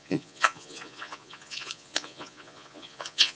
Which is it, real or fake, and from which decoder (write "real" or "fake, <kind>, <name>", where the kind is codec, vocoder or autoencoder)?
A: fake, vocoder, Vocos